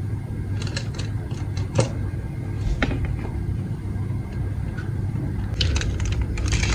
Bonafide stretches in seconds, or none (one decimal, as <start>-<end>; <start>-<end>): none